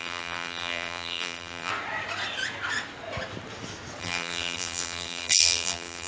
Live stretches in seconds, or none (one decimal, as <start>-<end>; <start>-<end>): 1.7-4.0